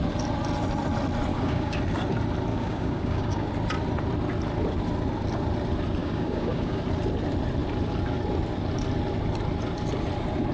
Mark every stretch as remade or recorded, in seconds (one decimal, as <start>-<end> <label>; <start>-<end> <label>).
0.0-1.3 recorded; 1.3-1.8 remade; 1.8-2.5 recorded; 2.5-3.5 remade; 3.5-6.0 recorded; 6.0-6.8 remade; 6.8-10.5 recorded